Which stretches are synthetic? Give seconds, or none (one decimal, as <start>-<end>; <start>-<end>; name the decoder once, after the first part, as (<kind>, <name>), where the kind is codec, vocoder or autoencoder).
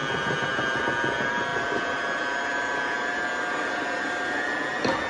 none